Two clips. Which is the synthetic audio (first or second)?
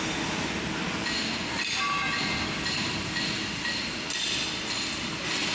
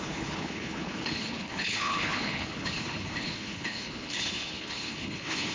second